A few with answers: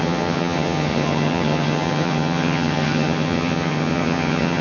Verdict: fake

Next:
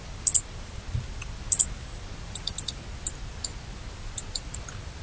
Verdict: real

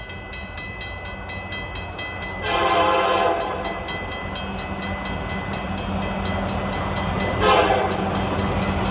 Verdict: real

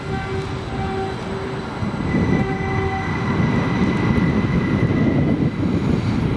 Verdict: real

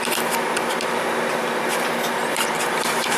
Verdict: real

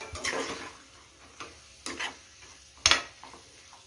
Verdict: real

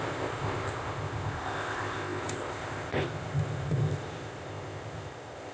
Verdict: fake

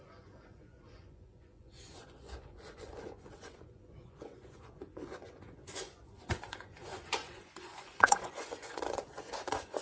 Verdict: fake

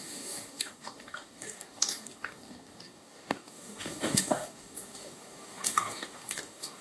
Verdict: fake